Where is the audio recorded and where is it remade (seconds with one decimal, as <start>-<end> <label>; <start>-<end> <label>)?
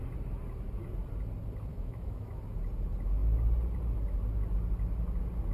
0.0-1.7 recorded; 1.7-2.4 remade; 2.4-5.5 recorded